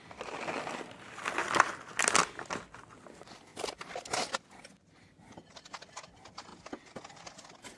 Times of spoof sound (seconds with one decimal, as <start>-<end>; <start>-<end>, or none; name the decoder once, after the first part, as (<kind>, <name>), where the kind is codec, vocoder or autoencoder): none